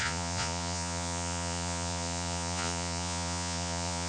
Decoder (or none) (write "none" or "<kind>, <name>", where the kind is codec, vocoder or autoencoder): vocoder, Vocos